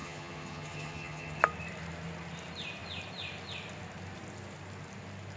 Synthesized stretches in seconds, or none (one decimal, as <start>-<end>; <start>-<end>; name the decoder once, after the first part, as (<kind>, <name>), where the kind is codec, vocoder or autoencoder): 0.0-1.4 (vocoder, HiFi-GAN)